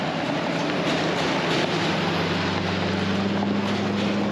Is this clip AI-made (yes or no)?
no